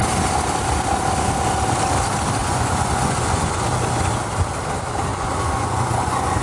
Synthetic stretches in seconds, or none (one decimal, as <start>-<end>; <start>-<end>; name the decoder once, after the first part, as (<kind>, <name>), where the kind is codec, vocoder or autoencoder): 2.4-3.7 (vocoder, Vocos); 5.1-6.4